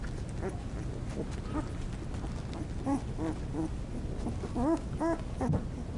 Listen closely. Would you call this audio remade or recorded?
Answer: recorded